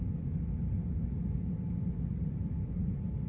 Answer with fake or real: real